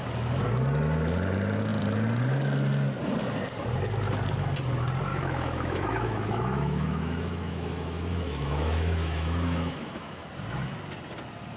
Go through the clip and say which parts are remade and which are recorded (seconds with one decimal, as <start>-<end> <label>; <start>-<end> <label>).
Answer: 0.0-5.1 recorded; 5.1-10.3 remade; 10.3-11.6 recorded